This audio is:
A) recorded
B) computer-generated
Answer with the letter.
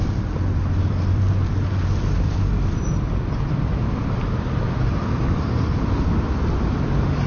B